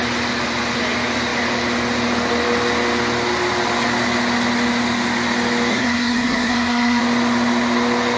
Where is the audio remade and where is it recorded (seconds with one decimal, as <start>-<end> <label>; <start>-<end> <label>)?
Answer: 0.0-5.7 recorded; 5.7-7.0 remade; 7.0-8.2 recorded